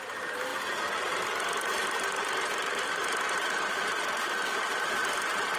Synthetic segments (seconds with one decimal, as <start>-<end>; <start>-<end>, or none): 1.8-5.6